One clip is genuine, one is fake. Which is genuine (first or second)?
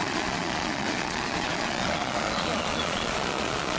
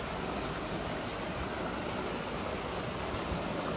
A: second